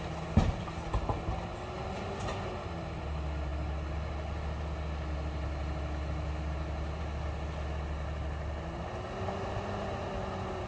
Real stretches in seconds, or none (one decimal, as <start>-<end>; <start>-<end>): 0.0-10.7